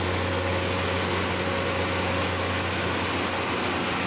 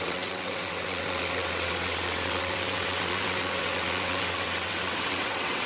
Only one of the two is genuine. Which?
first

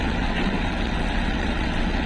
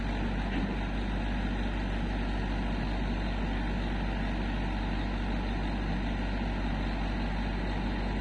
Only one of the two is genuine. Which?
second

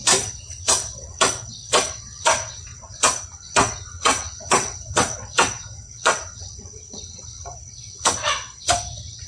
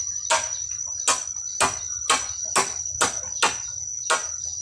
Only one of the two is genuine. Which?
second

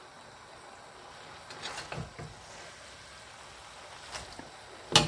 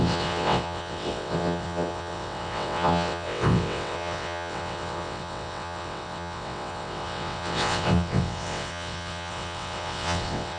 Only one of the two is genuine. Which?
first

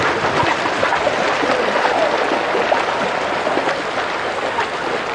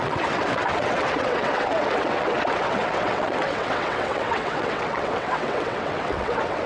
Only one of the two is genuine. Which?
first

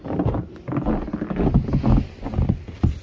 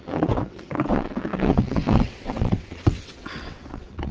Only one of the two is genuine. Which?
first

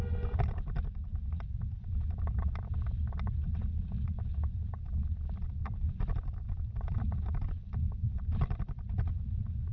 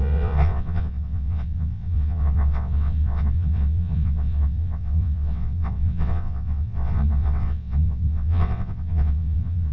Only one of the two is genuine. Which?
first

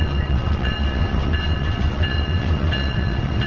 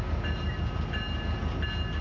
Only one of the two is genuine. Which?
second